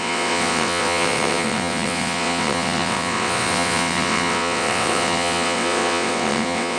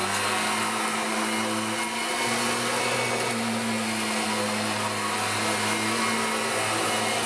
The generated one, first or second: first